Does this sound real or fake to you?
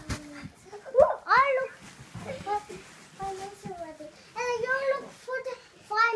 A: real